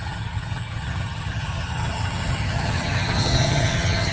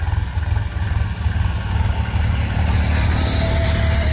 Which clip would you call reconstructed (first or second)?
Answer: first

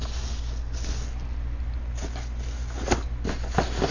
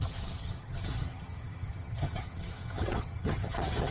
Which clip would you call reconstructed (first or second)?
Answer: second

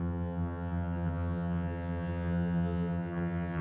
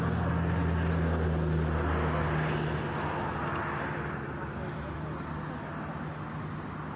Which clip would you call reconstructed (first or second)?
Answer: first